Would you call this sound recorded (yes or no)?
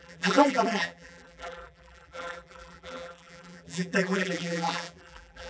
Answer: no